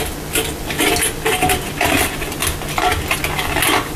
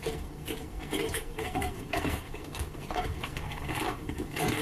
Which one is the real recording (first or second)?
first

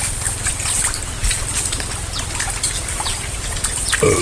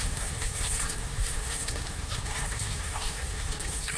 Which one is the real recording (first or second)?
first